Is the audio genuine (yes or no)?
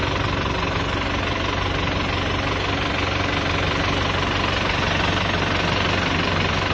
yes